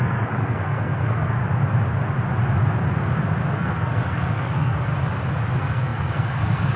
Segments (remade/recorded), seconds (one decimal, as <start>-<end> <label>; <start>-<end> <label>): 0.0-1.4 remade; 1.4-3.5 recorded; 3.5-4.9 remade; 4.9-5.5 recorded; 5.5-6.8 remade